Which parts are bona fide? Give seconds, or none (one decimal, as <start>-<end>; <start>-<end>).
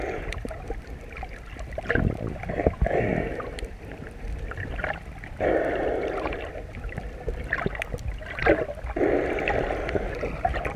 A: 0.8-10.8